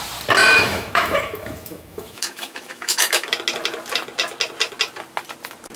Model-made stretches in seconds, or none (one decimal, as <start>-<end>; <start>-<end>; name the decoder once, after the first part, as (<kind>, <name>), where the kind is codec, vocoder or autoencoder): 0.4-3.3 (autoencoder, DAC-VAE)